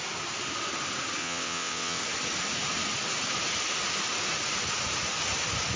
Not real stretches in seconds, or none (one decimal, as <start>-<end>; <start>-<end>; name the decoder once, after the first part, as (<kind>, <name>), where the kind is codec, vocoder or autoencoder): 1.2-2.0 (vocoder, WaveNeXt)